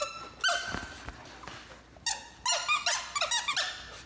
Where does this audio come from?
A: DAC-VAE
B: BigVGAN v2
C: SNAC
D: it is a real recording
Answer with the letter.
D